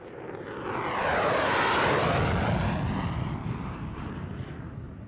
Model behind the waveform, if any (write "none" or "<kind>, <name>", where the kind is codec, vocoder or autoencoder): none